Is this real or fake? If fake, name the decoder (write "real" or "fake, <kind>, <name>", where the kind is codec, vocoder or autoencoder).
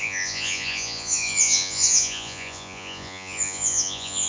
fake, vocoder, Vocos